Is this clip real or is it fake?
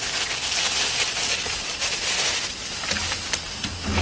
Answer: real